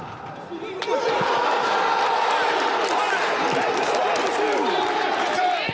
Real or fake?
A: real